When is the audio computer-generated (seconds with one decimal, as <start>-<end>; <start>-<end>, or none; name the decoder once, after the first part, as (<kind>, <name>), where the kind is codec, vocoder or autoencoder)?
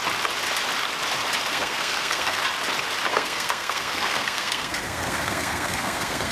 1.5-2.4 (codec, SNAC); 3.1-6.3